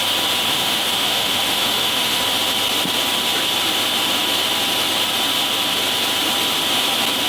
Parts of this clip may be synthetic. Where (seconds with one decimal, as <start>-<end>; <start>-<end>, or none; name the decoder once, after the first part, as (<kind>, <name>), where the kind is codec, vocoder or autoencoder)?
0.5-2.2 (autoencoder, DAC-VAE)